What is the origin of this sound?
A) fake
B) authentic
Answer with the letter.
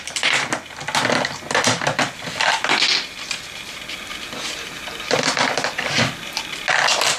B